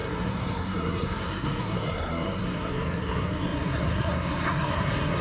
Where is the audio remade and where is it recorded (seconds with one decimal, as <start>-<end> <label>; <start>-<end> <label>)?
0.0-5.2 remade